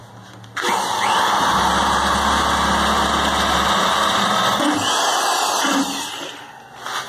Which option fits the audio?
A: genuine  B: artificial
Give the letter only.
A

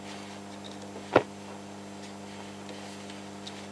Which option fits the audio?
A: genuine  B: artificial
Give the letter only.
A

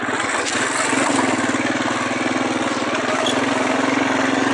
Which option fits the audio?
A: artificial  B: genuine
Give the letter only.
B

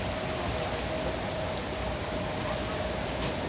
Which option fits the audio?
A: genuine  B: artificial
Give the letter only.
A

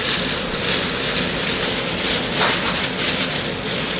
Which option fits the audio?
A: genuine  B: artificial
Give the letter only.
A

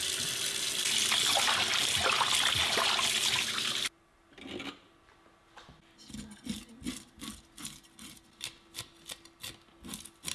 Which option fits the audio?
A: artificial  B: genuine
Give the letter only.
B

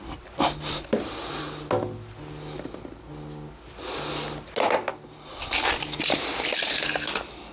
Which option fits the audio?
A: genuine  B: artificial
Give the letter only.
A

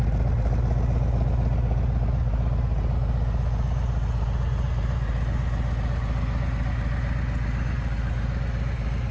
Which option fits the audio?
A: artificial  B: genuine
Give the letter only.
B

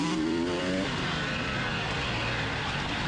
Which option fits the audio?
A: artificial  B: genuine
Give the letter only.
A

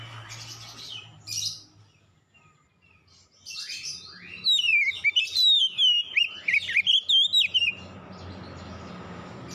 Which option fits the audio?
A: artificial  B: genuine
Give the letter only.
B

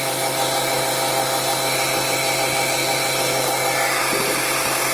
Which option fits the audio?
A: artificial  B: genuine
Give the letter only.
B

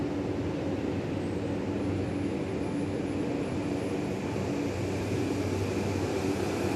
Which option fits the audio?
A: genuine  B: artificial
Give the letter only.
A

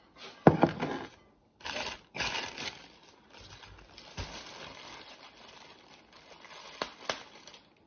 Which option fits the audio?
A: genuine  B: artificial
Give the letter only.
A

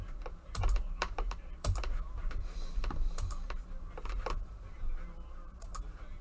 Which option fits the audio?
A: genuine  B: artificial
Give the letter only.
B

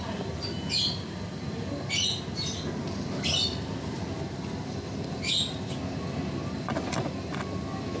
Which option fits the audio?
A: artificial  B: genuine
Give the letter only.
B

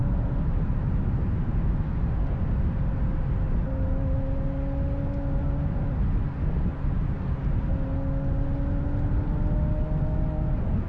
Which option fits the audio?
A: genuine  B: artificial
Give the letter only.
A